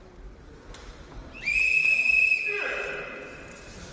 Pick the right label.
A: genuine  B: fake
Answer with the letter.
A